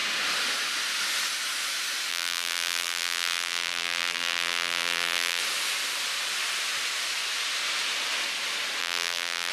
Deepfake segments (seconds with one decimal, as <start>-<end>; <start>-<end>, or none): 2.1-5.4; 8.8-9.5